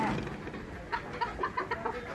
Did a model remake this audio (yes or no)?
no